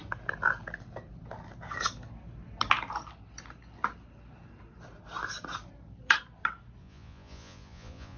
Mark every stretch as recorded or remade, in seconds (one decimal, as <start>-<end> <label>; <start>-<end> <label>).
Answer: 0.0-6.8 recorded; 6.8-8.2 remade